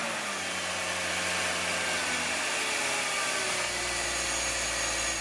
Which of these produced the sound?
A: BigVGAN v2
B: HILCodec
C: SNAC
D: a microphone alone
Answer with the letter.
D